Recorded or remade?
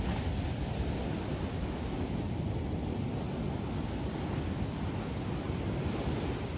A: recorded